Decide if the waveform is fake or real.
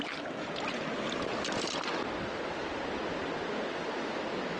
real